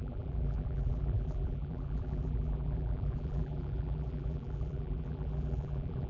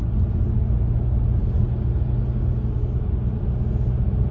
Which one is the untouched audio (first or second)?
second